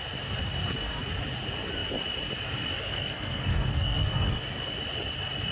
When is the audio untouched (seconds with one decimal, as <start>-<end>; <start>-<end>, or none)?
0.0-2.9; 4.4-5.5